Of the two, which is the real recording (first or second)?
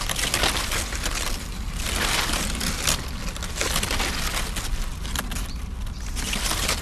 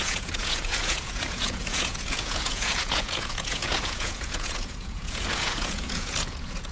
first